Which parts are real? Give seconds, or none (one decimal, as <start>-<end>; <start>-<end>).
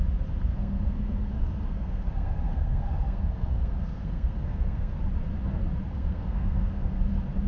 0.0-0.5; 5.0-5.9; 7.0-7.5